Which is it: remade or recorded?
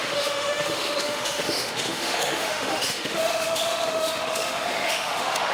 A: remade